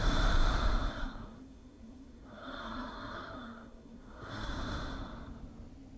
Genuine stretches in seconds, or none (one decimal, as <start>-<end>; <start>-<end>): 0.0-0.9; 4.5-6.0